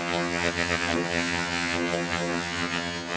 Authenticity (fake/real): fake